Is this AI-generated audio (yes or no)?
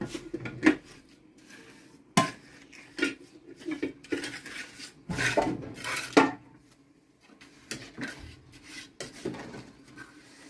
no